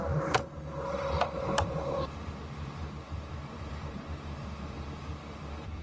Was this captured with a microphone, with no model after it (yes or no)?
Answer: no